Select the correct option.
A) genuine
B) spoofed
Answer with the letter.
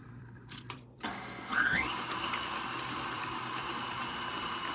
B